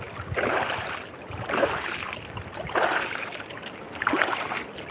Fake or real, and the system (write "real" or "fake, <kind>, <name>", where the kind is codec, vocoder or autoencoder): real